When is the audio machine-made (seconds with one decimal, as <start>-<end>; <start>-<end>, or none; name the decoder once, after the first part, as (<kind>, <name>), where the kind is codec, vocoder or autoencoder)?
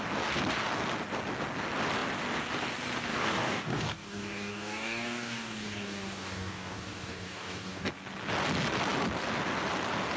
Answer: 3.1-7.9 (codec, DAC)